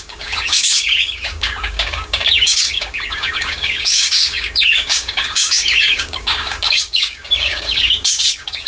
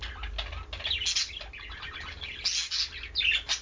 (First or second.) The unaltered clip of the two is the second